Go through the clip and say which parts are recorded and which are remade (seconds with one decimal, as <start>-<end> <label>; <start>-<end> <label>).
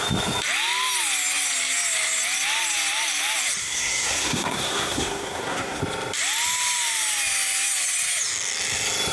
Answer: 0.0-3.6 recorded; 3.6-5.8 remade; 5.8-9.1 recorded